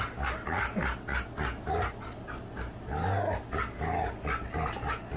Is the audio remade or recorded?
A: recorded